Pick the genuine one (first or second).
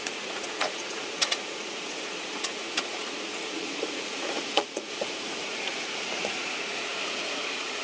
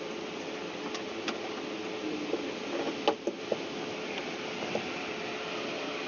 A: second